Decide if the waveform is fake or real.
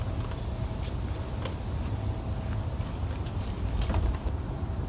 real